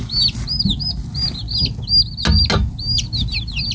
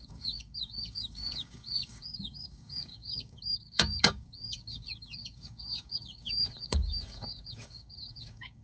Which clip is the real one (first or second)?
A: first